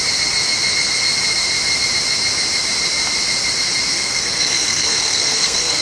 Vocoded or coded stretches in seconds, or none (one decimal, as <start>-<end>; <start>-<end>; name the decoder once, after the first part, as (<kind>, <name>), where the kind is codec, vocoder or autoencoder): 3.9-5.8 (codec, SNAC)